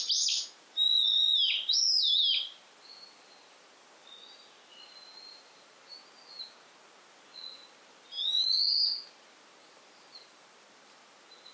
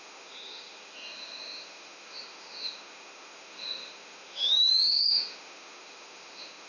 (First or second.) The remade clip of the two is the second